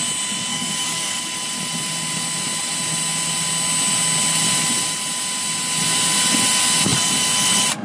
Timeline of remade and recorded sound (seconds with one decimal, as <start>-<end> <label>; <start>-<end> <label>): 0.0-0.5 recorded; 0.5-1.2 remade; 1.2-7.8 recorded